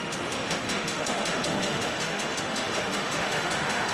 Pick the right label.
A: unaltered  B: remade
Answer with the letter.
B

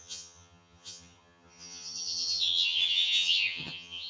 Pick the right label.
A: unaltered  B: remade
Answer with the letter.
B